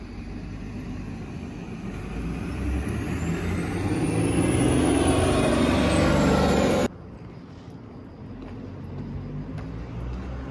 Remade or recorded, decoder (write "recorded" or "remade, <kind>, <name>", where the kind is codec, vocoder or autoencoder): recorded